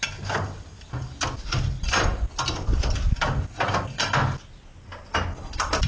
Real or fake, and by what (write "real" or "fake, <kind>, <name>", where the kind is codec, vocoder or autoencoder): real